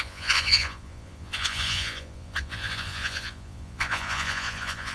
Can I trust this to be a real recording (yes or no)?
no